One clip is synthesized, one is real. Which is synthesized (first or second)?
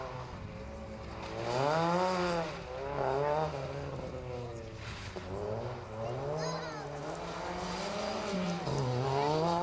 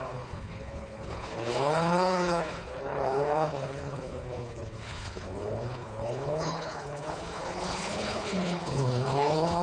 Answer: second